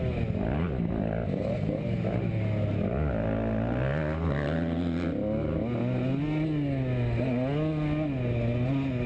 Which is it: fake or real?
real